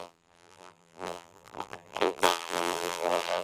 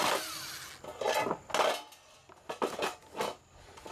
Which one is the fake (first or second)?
first